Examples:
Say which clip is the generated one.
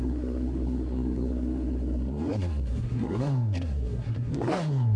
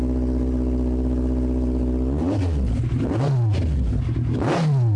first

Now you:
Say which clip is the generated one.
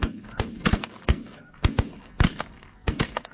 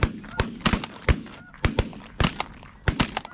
first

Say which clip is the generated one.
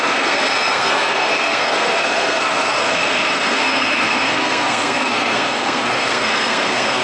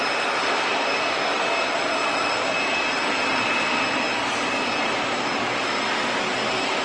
first